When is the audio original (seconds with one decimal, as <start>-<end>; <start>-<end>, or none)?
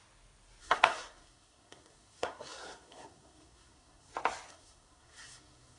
0.0-0.6; 4.1-4.5